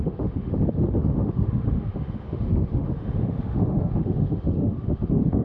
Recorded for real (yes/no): no